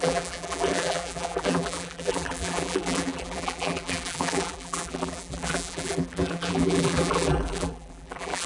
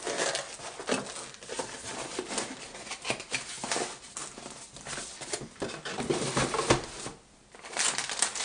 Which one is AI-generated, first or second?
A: first